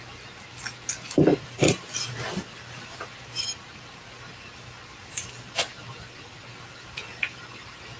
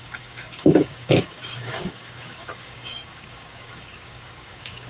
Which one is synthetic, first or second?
second